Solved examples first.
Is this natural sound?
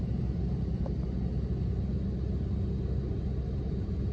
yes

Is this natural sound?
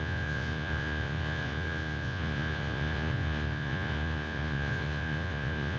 no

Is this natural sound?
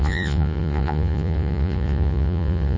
no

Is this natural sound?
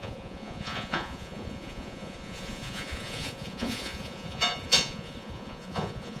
no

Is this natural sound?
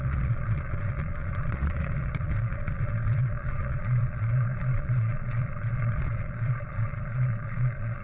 no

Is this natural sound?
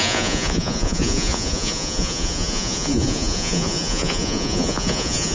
no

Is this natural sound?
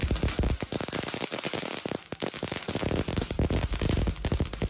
yes